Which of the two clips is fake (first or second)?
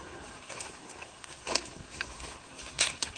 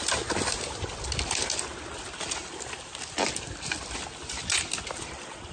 first